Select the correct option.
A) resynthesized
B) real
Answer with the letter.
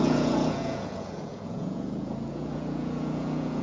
A